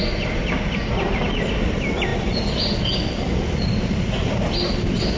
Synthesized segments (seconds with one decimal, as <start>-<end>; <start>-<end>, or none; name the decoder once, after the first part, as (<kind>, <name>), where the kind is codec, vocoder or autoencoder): none